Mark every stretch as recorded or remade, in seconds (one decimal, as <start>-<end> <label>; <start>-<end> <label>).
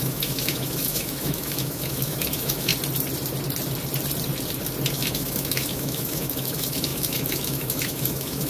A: 0.0-2.7 remade; 2.7-4.9 recorded; 4.9-8.5 remade